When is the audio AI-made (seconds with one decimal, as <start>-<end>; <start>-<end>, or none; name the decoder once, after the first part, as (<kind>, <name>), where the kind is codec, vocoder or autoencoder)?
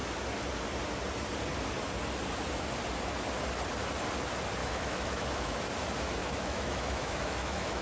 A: 4.6-5.6 (autoencoder, DAC-VAE); 6.2-7.8